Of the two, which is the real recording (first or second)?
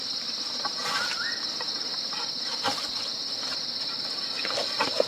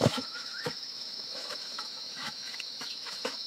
first